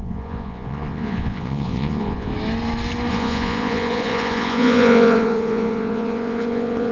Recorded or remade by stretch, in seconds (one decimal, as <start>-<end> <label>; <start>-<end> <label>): 0.0-2.3 remade; 2.3-3.1 recorded; 3.1-6.9 remade